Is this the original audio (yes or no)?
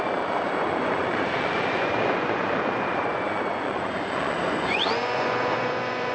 no